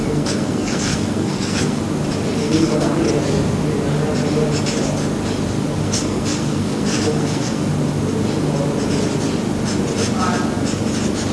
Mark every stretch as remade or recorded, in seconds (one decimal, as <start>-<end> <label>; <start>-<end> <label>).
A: 0.0-1.8 remade; 1.8-2.4 recorded; 2.4-3.0 remade; 3.0-5.8 recorded; 5.8-7.7 remade; 7.7-11.3 recorded

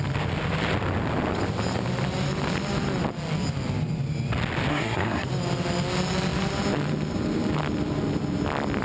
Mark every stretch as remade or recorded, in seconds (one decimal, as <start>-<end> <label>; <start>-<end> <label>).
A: 0.0-4.7 recorded; 4.7-5.3 remade; 5.3-8.8 recorded

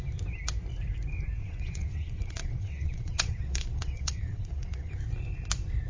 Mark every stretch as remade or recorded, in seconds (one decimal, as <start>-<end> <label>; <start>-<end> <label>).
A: 0.0-1.4 recorded; 1.4-4.9 remade; 4.9-5.9 recorded

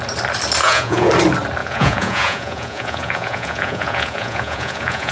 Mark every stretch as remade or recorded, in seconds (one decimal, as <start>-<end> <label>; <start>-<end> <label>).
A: 0.0-0.6 recorded; 0.6-1.1 remade; 1.1-1.6 recorded; 1.6-5.1 remade